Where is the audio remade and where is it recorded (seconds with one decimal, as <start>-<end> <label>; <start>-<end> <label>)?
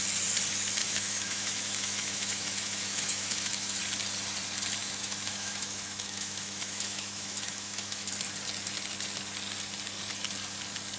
0.0-0.8 recorded; 0.8-3.8 remade; 3.8-4.8 recorded; 4.8-8.1 remade; 8.1-11.0 recorded